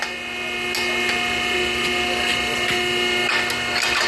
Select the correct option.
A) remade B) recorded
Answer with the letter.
B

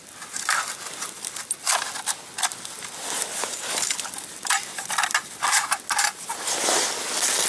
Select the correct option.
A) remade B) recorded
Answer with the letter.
B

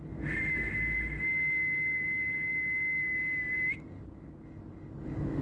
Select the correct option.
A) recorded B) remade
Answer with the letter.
A